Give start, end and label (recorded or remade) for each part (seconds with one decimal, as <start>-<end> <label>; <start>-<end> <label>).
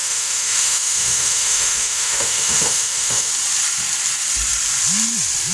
0.0-3.3 remade; 3.3-5.5 recorded